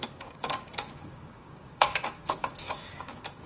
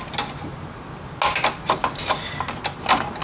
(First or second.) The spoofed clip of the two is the first